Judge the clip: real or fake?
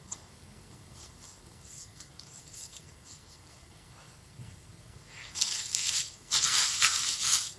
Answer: fake